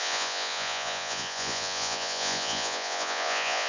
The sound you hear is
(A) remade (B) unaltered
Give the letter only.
A